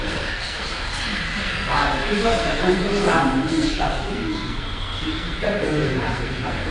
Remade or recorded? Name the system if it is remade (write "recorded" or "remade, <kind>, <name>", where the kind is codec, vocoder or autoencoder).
remade, codec, SNAC